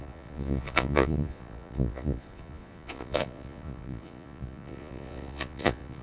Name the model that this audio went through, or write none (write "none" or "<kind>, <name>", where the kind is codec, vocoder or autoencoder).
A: vocoder, Vocos